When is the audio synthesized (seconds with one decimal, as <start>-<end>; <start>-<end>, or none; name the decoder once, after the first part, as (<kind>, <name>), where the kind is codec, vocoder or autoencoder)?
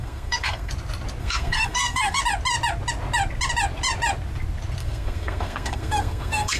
0.0-0.7 (codec, SNAC); 1.2-2.2; 4.8-6.6